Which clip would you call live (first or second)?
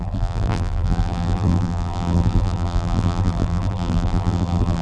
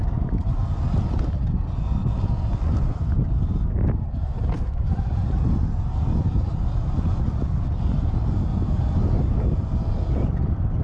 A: second